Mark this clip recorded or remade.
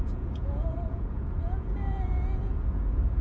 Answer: remade